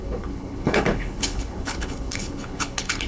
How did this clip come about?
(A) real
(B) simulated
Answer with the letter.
B